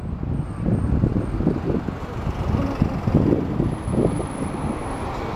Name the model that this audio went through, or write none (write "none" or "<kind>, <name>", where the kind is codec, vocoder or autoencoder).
none